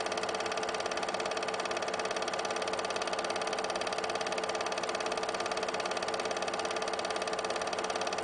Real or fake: real